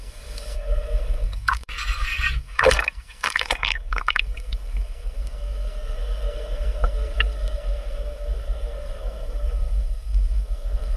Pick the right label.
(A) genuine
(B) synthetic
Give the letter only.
B